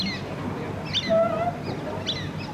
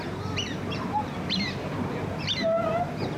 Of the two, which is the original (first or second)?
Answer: first